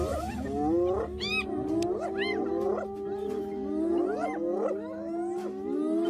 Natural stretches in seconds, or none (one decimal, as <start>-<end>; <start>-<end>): 0.0-6.1